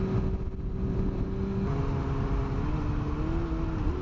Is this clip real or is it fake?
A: real